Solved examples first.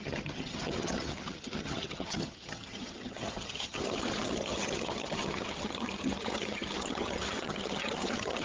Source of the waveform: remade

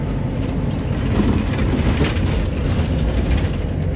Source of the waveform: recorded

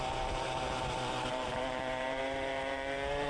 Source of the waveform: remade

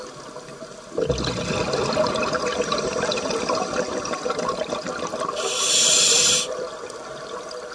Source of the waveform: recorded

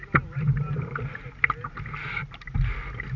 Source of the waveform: recorded